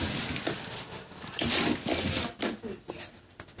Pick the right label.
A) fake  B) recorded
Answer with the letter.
B